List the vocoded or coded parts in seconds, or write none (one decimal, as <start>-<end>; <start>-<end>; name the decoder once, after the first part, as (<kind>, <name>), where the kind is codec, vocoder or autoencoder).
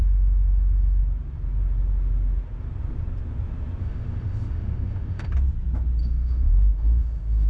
0.0-1.0 (autoencoder, DAC-VAE); 3.8-5.3; 6.0-7.5